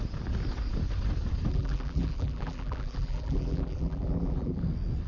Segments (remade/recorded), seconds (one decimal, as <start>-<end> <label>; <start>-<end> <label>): 0.0-1.5 recorded; 1.5-4.6 remade; 4.6-5.1 recorded